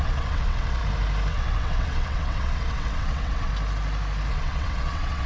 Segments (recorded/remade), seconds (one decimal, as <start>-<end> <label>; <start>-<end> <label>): 0.0-0.8 remade; 0.8-1.3 recorded; 1.3-3.5 remade; 3.5-4.3 recorded; 4.3-5.3 remade